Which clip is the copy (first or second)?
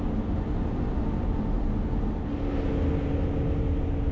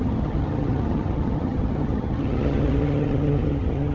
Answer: second